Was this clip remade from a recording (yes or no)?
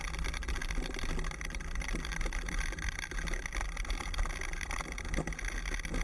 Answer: no